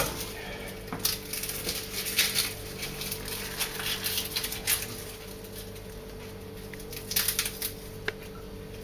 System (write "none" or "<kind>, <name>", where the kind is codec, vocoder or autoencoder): none